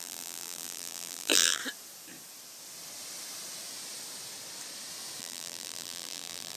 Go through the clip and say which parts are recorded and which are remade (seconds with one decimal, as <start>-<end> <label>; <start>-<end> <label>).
0.0-1.6 remade; 1.6-5.2 recorded; 5.2-6.6 remade